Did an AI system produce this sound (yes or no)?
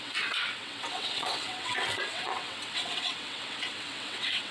yes